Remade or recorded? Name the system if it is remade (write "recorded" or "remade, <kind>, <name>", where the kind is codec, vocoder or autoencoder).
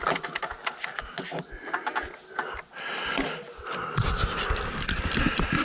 recorded